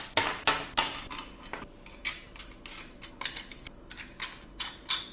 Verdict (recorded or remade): recorded